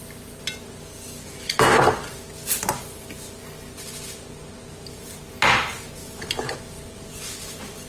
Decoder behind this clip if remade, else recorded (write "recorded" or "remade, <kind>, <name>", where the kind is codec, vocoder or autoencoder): recorded